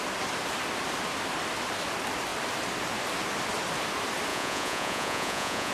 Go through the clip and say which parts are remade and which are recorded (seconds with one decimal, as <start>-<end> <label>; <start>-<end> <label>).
0.0-4.3 recorded; 4.3-5.7 remade